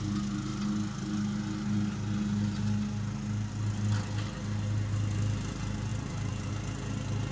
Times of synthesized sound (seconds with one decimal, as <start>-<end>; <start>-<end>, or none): 5.9-6.5